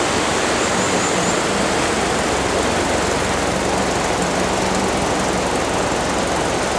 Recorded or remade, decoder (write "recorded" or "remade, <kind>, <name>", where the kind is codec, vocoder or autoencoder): recorded